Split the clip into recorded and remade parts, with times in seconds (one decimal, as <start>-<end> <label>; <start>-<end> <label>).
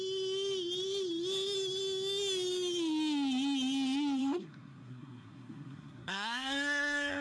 0.0-4.2 recorded; 4.2-7.2 remade